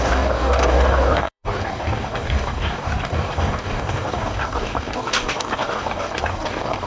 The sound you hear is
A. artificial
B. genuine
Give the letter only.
A